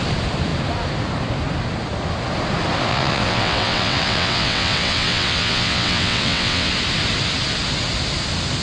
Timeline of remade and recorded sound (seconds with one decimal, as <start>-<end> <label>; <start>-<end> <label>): 0.0-2.9 recorded; 2.9-6.7 remade; 6.7-8.6 recorded